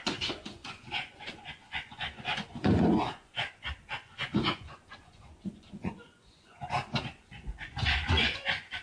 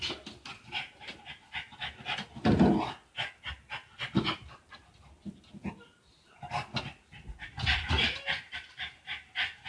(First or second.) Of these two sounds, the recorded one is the second